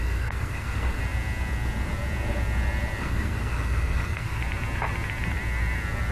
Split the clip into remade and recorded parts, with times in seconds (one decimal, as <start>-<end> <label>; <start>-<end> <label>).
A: 0.0-1.0 remade; 1.0-3.0 recorded; 3.0-4.4 remade; 4.4-6.1 recorded

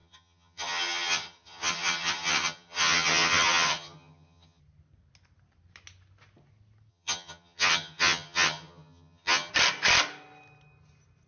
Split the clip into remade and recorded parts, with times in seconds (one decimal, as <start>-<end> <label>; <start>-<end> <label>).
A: 0.0-4.6 remade; 4.6-6.9 recorded; 6.9-9.5 remade; 9.5-11.3 recorded

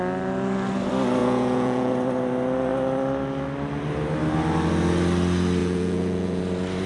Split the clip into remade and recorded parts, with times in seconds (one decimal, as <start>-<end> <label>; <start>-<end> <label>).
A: 0.0-1.2 recorded; 1.2-1.9 remade; 1.9-5.6 recorded; 5.6-6.4 remade; 6.4-6.9 recorded

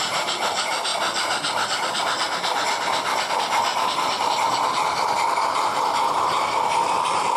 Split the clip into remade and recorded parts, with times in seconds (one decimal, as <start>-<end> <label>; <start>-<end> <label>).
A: 0.0-0.9 remade; 0.9-3.3 recorded; 3.3-7.4 remade

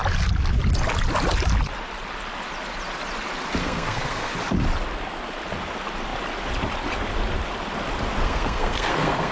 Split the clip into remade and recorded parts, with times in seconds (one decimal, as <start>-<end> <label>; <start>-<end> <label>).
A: 0.0-3.6 recorded; 3.6-4.3 remade; 4.3-8.2 recorded; 8.2-9.3 remade

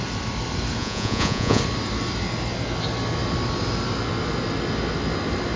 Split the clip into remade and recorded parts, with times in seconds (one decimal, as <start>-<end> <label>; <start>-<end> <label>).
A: 0.0-0.8 recorded; 0.8-1.6 remade; 1.6-5.6 recorded

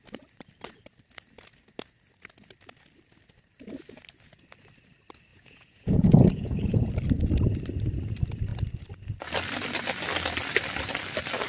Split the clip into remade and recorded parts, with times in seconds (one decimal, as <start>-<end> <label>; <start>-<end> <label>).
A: 0.0-5.3 recorded; 5.3-6.9 remade; 6.9-11.5 recorded